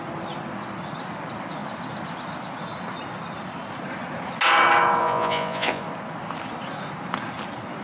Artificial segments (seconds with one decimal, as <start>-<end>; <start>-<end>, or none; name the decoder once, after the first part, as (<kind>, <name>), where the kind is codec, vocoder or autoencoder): 5.0-5.8 (vocoder, Vocos)